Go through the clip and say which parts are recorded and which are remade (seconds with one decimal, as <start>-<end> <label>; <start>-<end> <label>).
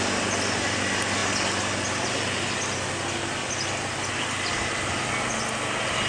0.0-6.1 recorded